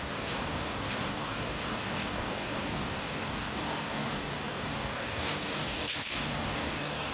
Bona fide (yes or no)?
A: no